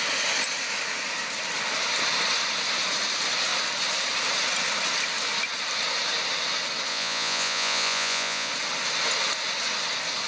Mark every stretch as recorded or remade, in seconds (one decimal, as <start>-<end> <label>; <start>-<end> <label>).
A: 0.0-6.9 recorded; 6.9-8.5 remade; 8.5-10.3 recorded